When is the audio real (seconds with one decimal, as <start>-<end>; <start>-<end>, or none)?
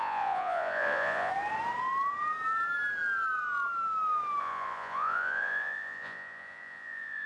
1.3-4.4